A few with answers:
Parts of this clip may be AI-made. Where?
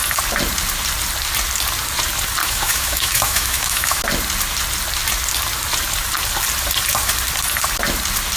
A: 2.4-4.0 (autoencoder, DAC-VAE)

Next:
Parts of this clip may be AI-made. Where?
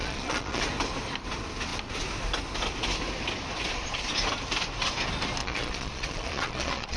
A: 0.0-0.6 (vocoder, Vocos); 5.4-7.0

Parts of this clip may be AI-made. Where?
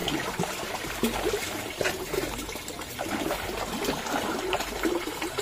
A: none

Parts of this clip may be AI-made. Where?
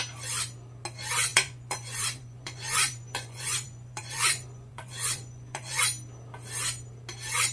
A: 1.3-5.8 (vocoder, Vocos)